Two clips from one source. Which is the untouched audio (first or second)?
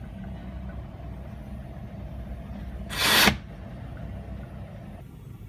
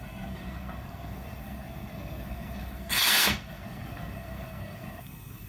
first